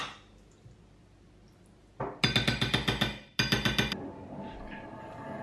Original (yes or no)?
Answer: yes